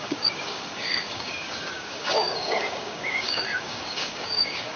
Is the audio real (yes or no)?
no